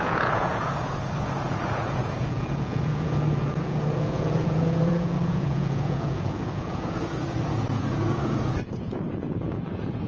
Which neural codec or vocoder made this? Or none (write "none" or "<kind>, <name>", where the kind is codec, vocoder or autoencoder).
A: vocoder, Vocos